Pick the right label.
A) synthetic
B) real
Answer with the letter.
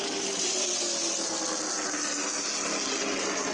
B